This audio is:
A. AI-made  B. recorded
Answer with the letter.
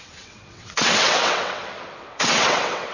A